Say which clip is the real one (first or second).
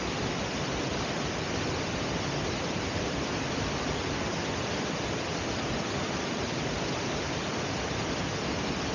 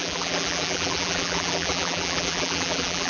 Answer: first